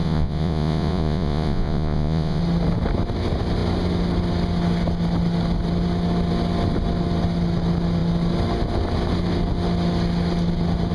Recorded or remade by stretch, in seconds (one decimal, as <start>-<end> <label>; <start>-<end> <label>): 0.0-2.4 remade; 2.4-10.9 recorded